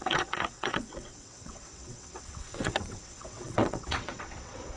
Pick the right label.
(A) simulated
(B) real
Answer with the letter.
A